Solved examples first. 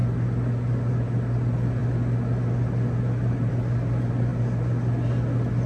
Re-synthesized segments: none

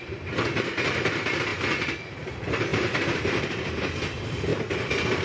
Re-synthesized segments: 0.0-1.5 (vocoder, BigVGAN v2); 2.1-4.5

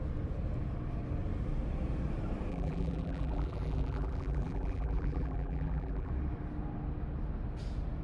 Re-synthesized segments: 2.5-6.1 (vocoder, BigVGAN v2)

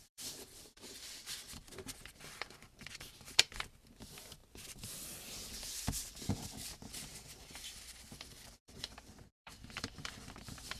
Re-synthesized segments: 0.0-4.4 (vocoder, BigVGAN v2); 6.9-10.8

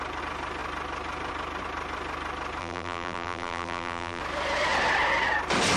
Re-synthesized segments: 2.6-4.2 (vocoder, BigVGAN v2)

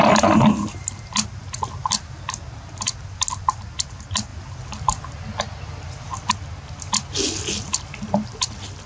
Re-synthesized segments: none

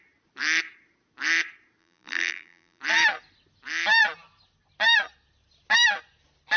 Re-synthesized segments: 1.8-2.8 (vocoder, BigVGAN v2)

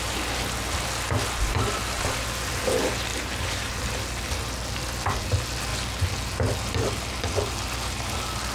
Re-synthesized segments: 3.1-3.8 (vocoder, BigVGAN v2)